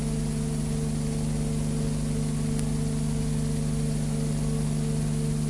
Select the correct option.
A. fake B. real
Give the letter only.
B